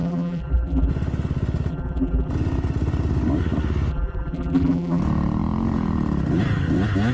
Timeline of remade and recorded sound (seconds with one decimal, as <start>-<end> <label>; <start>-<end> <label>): 0.0-0.9 remade; 0.9-1.7 recorded; 1.7-2.3 remade; 2.3-3.9 recorded; 3.9-5.0 remade; 5.0-7.1 recorded